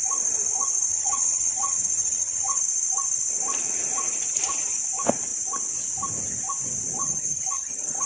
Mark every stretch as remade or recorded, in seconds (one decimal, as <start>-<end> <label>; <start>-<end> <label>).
0.0-0.9 recorded; 0.9-2.6 remade; 2.6-7.0 recorded; 7.0-8.1 remade